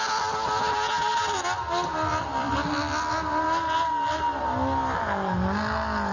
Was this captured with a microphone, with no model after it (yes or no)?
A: yes